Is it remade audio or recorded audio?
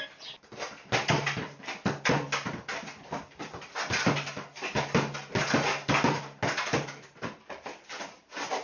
recorded